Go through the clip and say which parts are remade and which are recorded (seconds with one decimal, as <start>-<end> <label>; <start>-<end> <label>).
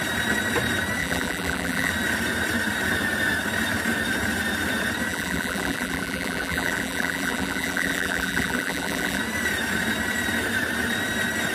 0.0-1.0 recorded; 1.0-1.9 remade; 1.9-5.1 recorded; 5.1-9.2 remade; 9.2-11.5 recorded